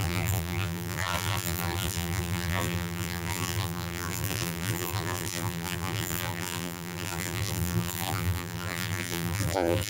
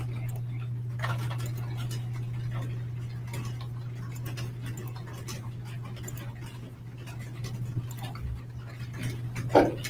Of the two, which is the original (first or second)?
second